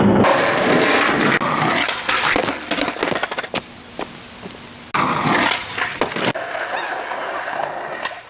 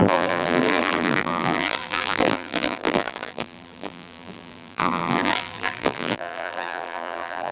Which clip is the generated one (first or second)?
second